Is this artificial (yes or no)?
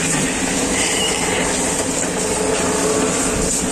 no